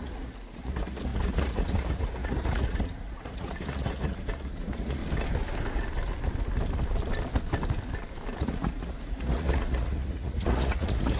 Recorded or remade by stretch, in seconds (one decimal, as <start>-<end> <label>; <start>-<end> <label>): 0.0-5.0 remade; 5.0-8.4 recorded; 8.4-11.2 remade